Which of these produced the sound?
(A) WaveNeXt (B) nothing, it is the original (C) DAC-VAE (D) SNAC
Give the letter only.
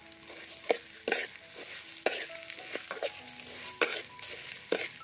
B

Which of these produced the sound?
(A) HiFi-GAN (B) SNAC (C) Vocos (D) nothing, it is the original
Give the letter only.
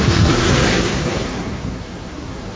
B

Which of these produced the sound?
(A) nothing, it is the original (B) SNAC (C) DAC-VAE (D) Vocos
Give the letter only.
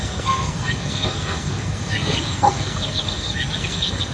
B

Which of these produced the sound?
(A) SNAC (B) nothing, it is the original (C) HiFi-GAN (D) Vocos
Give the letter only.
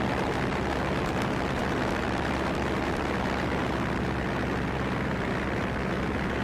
B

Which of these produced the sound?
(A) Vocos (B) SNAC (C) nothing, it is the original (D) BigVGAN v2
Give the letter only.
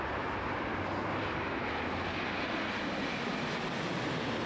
C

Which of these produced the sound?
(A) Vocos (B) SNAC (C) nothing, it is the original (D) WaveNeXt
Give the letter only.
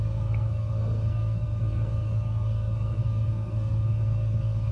B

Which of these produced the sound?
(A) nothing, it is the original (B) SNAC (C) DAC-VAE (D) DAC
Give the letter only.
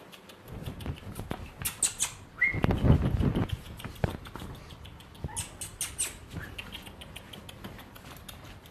A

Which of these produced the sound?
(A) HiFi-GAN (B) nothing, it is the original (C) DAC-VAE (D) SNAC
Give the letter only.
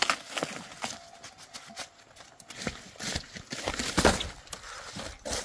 B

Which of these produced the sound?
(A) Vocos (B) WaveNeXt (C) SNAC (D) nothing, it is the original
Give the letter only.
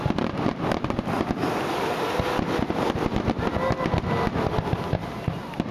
D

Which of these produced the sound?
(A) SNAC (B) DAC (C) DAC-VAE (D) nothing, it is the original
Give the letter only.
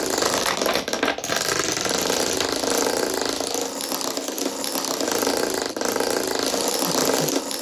D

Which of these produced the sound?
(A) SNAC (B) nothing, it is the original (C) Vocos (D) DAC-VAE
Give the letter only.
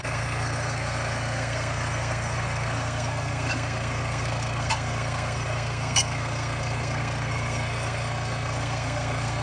A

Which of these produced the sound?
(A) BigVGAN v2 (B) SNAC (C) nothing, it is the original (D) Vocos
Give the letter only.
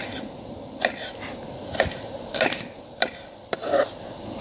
C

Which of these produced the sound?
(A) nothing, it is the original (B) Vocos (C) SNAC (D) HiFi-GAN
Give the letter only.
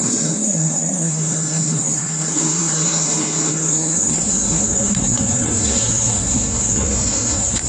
C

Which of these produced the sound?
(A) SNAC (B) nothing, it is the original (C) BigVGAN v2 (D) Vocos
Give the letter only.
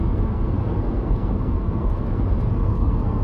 A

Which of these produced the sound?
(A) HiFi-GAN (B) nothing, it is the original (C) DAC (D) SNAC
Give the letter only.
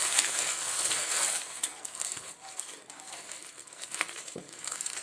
D